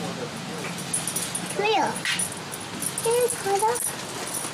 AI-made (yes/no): no